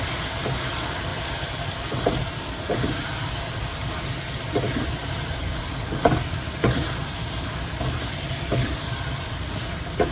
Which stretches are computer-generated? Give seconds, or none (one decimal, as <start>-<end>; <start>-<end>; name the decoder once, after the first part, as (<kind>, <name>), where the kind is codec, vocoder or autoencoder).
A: 1.1-3.9 (vocoder, BigVGAN v2); 8.5-10.1